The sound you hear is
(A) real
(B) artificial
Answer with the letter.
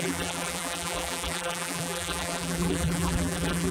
B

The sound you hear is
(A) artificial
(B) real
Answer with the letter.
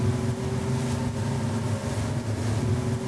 B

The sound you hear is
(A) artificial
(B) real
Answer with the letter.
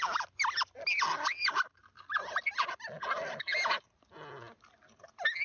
B